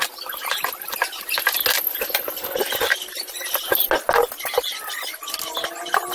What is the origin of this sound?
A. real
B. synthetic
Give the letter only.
A